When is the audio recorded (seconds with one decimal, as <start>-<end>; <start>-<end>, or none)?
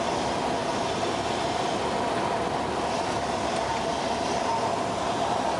0.0-5.6